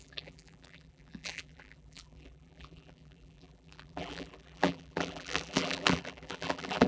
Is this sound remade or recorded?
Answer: remade